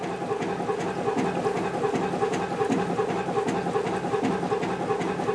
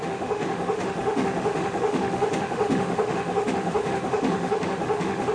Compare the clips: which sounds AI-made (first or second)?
second